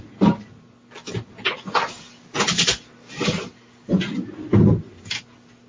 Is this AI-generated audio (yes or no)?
no